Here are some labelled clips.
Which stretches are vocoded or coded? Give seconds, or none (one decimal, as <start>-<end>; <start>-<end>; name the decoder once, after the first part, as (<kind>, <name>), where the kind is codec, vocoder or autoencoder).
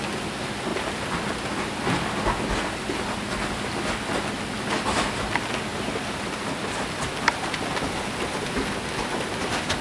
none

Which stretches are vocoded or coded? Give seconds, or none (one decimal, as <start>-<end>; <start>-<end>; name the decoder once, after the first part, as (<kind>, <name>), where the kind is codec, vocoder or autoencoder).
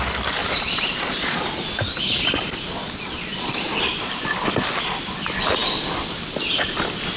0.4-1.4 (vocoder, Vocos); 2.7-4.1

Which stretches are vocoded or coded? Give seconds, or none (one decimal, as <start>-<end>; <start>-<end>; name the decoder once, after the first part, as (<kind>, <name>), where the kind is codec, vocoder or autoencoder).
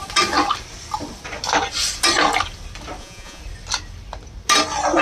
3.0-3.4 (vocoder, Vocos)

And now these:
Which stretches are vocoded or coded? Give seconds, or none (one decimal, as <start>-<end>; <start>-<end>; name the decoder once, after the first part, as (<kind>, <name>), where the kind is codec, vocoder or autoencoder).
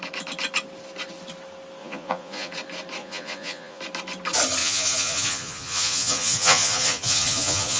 1.8-2.5 (vocoder, Vocos); 3.0-3.8; 4.6-7.8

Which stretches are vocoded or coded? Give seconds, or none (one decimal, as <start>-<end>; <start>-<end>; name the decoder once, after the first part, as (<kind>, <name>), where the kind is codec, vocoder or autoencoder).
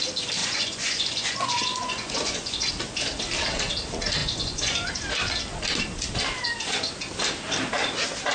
0.4-2.7 (vocoder, Vocos); 4.2-4.9